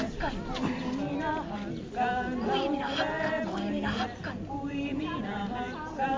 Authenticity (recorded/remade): recorded